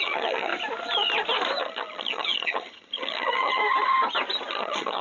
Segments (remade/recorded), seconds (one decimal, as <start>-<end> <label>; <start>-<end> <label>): 0.0-0.5 remade; 0.5-1.6 recorded; 1.6-3.6 remade; 3.6-4.5 recorded; 4.5-5.0 remade